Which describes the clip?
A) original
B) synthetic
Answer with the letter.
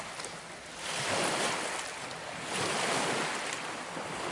A